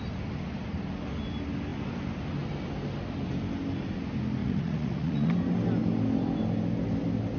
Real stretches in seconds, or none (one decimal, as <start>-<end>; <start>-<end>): 0.0-4.4; 5.3-7.4